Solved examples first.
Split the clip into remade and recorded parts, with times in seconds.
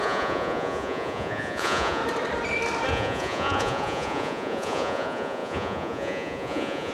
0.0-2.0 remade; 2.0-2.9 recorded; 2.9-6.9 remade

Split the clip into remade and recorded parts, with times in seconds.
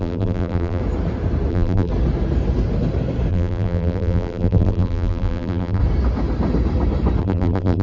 0.0-0.8 remade; 0.8-1.5 recorded; 1.5-1.9 remade; 1.9-3.3 recorded; 3.3-5.8 remade; 5.8-7.2 recorded; 7.2-7.8 remade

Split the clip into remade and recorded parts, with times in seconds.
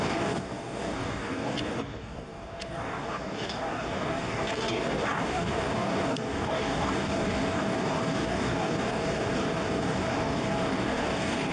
0.0-11.5 remade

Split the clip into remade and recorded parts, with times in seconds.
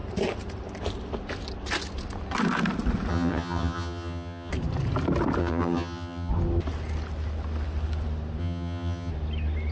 0.0-3.1 recorded; 3.1-4.5 remade; 4.5-5.4 recorded; 5.4-6.3 remade; 6.3-8.4 recorded; 8.4-9.1 remade; 9.1-9.7 recorded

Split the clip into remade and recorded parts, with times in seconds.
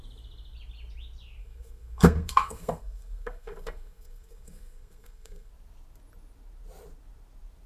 0.0-1.4 recorded; 1.4-5.5 remade; 5.5-7.7 recorded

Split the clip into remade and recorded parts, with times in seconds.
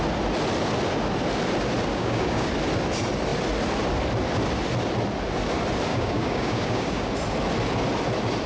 0.0-1.9 recorded; 1.9-2.5 remade; 2.5-5.9 recorded; 5.9-7.1 remade; 7.1-8.5 recorded